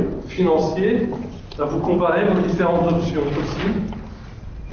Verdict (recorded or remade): recorded